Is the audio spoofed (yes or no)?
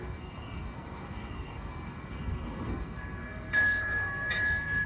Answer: yes